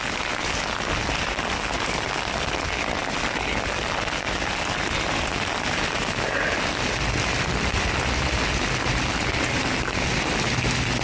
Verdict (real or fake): real